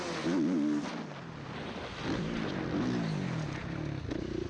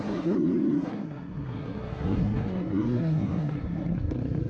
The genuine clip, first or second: first